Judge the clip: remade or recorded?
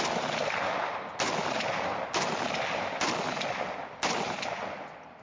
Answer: recorded